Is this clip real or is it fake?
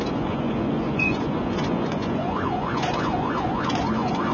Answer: fake